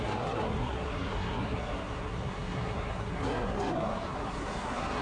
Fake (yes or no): yes